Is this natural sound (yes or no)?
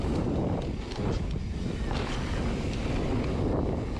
yes